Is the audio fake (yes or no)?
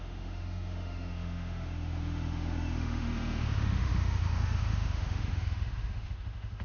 yes